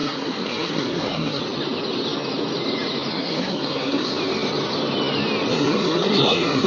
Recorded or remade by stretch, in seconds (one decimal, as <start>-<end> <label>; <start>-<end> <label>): 0.0-1.4 remade; 1.4-3.1 recorded; 3.1-4.1 remade; 4.1-5.5 recorded; 5.5-6.7 remade